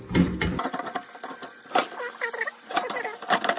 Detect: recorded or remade recorded